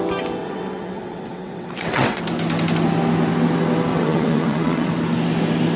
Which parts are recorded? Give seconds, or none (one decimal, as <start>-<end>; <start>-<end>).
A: 0.0-0.4; 2.2-3.9; 4.9-5.8